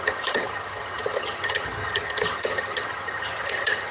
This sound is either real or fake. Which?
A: fake